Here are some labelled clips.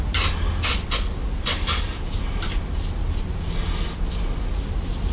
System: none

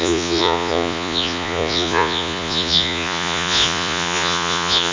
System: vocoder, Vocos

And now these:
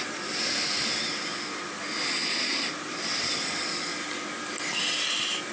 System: none